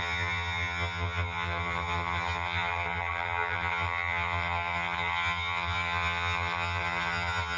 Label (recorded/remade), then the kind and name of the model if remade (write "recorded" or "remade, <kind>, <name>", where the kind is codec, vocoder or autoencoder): remade, vocoder, HiFi-GAN